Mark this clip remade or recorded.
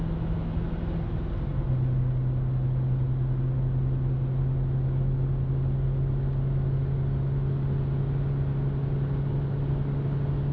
recorded